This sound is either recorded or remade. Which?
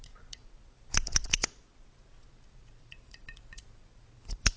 remade